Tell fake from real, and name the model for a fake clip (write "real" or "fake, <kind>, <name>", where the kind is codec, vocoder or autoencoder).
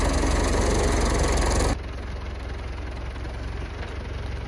real